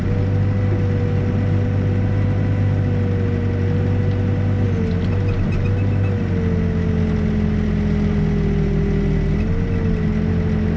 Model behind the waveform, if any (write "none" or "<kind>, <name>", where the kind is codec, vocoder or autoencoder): none